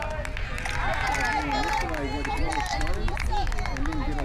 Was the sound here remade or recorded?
recorded